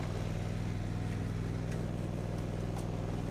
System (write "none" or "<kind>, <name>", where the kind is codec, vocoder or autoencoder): none